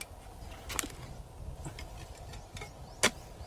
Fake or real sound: real